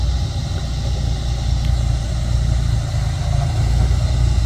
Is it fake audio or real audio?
real